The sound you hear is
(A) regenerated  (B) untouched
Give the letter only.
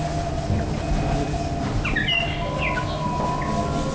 B